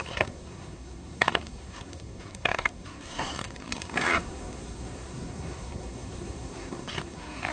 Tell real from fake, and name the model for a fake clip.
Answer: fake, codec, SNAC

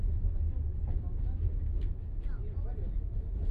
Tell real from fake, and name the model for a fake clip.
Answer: real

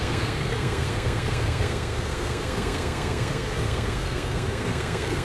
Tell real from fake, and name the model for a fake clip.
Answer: fake, codec, SNAC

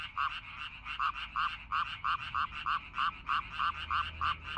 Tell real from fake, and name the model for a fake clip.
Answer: real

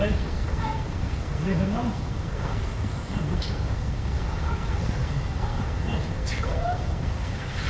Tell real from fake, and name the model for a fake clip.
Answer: fake, codec, SNAC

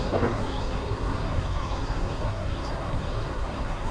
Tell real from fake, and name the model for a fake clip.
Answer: fake, codec, SNAC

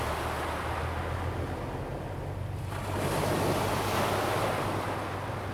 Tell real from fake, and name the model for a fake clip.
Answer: real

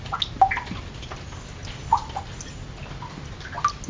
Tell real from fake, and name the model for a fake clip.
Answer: real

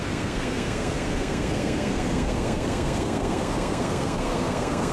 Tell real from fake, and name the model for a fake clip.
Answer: fake, codec, SNAC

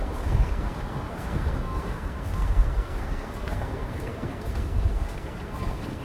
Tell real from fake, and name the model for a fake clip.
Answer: fake, codec, SNAC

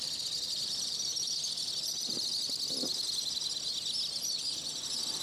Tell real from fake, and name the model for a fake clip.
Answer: real